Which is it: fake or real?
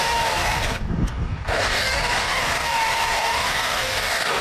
fake